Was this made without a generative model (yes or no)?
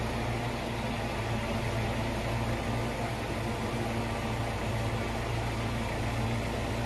yes